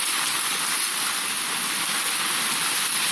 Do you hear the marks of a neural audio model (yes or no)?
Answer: no